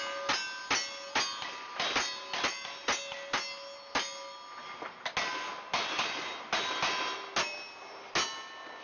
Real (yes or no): yes